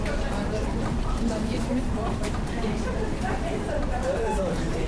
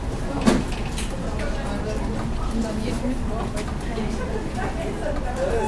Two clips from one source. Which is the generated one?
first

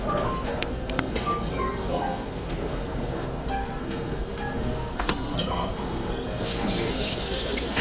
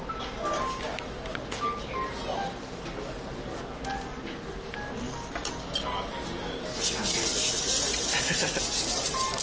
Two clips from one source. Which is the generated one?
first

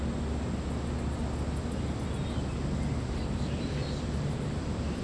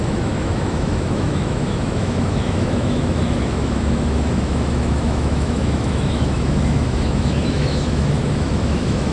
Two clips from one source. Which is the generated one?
second